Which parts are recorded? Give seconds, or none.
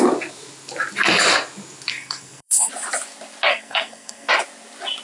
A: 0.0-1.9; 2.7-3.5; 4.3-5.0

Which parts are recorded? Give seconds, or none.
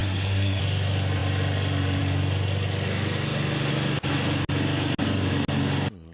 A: 0.6-6.1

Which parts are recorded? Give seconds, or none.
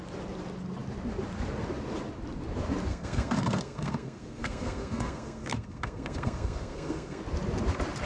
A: 0.0-2.9; 7.2-8.1